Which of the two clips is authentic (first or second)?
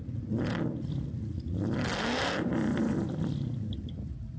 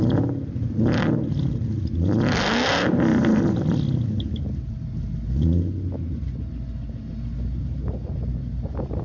second